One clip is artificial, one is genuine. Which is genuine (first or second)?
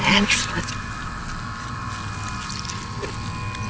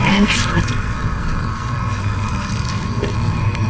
first